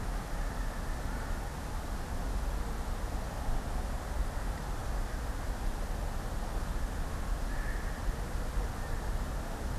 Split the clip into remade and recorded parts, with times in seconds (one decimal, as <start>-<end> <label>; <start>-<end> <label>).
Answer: 0.0-9.8 recorded